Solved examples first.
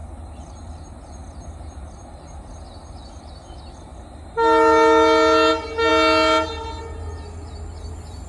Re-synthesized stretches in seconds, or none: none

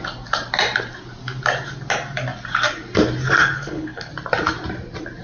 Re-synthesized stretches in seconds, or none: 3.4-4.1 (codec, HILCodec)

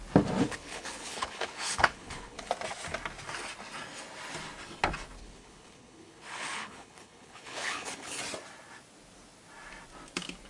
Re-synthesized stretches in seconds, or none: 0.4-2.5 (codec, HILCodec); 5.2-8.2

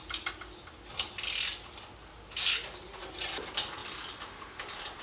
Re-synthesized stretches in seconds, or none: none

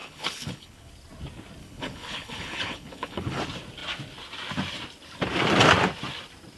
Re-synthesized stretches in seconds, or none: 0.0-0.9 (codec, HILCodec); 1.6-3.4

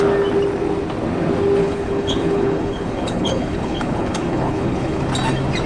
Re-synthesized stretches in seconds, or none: 1.6-5.0 (codec, HILCodec)

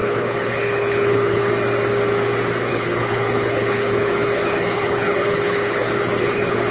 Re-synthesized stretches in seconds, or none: 0.0-1.5 (codec, HILCodec); 2.7-6.7